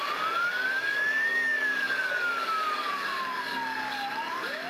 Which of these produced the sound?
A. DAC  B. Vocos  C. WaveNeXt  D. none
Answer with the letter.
A